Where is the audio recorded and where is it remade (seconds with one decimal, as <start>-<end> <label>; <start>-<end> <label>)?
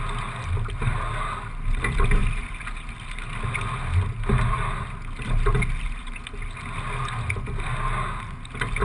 0.0-8.8 recorded